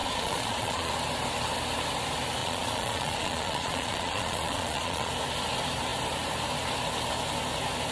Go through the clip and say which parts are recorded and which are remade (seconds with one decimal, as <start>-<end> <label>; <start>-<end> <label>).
0.0-0.9 remade; 0.9-2.4 recorded; 2.4-5.1 remade; 5.1-7.9 recorded